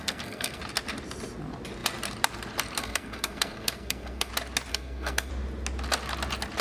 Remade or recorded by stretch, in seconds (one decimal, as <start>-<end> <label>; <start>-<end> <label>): 0.0-0.6 remade; 0.6-2.8 recorded; 2.8-4.3 remade; 4.3-4.7 recorded; 4.7-5.3 remade; 5.3-6.6 recorded

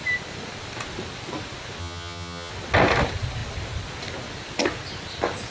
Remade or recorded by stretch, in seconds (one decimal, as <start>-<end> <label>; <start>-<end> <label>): 0.0-1.8 recorded; 1.8-2.5 remade; 2.5-5.5 recorded

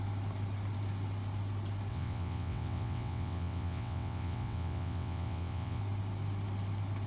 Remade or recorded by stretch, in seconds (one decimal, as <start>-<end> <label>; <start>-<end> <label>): 0.0-1.9 recorded; 1.9-5.8 remade; 5.8-7.1 recorded

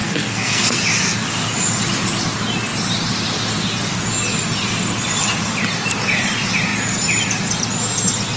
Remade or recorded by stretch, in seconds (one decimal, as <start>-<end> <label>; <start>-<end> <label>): 0.0-0.8 remade; 0.8-8.4 recorded